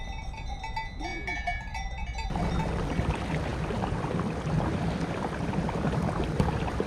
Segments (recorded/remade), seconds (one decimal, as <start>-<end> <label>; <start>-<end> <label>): 0.0-1.1 recorded; 1.1-2.3 remade; 2.3-6.9 recorded